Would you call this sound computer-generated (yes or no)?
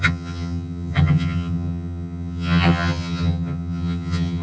yes